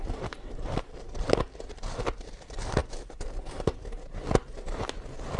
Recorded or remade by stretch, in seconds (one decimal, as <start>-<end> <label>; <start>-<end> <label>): 0.0-1.2 remade; 1.2-2.8 recorded; 2.8-4.0 remade; 4.0-5.4 recorded